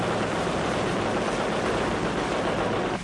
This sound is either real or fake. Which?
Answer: real